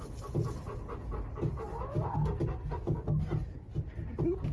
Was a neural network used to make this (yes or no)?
no